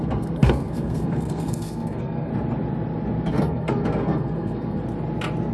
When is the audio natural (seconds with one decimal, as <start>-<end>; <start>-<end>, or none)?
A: 2.3-3.3; 4.8-5.5